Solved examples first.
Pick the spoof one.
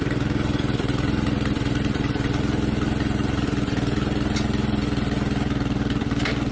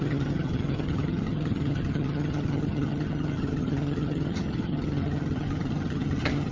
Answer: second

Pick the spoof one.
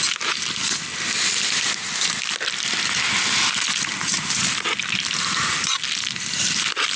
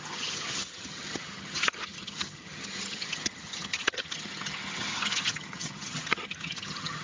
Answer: second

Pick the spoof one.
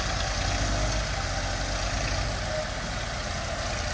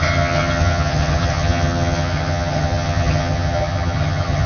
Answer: second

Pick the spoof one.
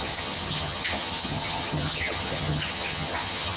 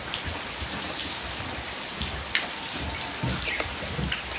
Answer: first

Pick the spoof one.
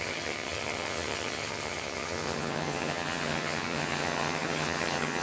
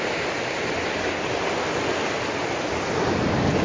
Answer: first